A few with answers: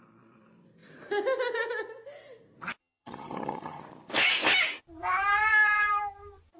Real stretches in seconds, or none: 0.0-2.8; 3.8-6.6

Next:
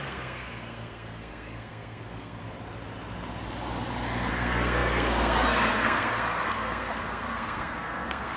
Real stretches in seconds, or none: 2.4-4.3

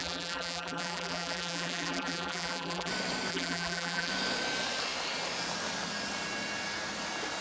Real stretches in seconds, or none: 2.9-3.3; 4.1-7.4

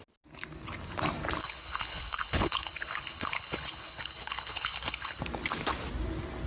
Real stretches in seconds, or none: 0.0-1.4; 5.2-6.5